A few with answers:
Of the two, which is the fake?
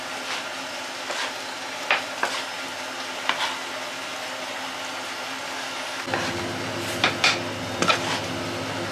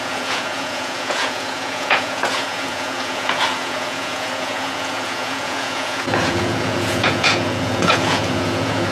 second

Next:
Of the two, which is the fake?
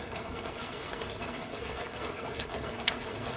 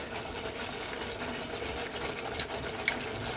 first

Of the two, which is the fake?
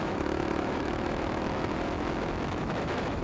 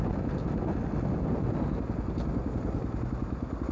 first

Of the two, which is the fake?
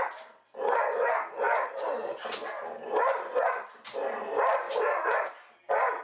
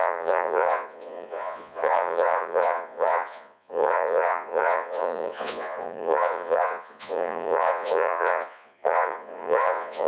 second